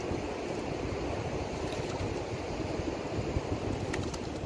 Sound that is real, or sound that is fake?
real